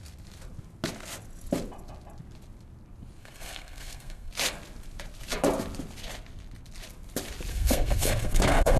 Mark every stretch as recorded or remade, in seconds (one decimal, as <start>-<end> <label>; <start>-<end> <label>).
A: 0.0-3.2 recorded; 3.2-4.3 remade; 4.3-7.5 recorded; 7.5-8.8 remade